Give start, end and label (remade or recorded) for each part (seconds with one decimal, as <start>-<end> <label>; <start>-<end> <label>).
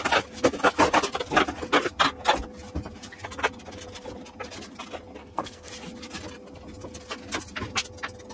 0.0-5.2 recorded; 5.2-5.7 remade; 5.7-8.3 recorded